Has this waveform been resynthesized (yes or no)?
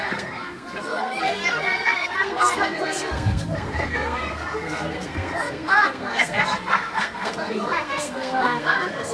yes